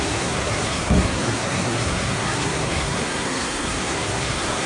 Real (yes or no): no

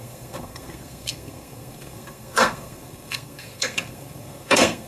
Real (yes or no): no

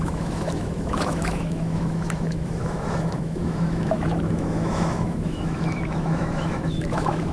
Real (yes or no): no